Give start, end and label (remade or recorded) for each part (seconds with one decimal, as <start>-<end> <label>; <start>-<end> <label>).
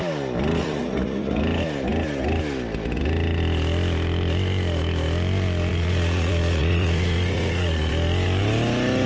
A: 0.0-0.6 recorded; 0.6-1.4 remade; 1.4-5.7 recorded; 5.7-7.9 remade; 7.9-9.1 recorded